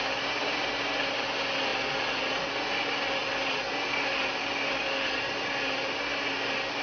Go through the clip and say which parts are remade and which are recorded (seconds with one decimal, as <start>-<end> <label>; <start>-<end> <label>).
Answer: 0.0-6.8 recorded